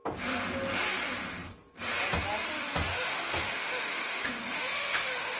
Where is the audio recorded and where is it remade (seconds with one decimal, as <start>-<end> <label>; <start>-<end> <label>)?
0.0-2.9 recorded; 2.9-5.4 remade